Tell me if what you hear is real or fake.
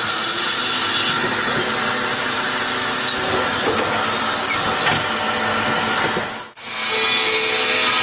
real